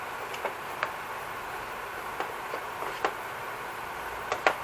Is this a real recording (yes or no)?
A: yes